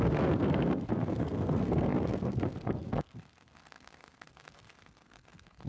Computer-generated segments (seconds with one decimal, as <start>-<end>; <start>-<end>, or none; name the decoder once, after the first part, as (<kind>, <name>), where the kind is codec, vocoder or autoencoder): 0.0-5.7 (codec, SNAC)